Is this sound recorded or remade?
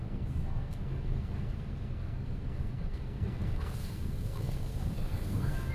remade